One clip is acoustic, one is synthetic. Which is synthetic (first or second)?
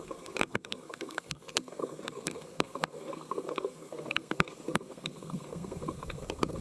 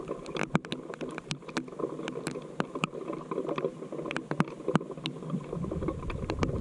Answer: first